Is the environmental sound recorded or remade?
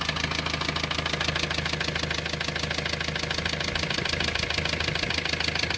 recorded